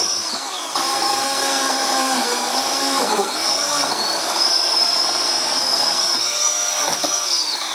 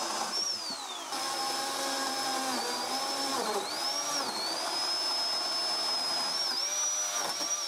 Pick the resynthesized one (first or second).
first